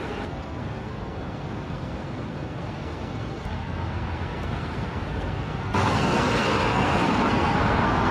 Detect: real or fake fake